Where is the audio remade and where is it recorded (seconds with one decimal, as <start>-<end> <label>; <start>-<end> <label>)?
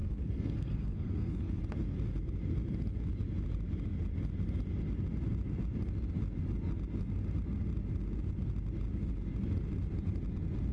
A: 0.0-1.6 remade; 1.6-10.7 recorded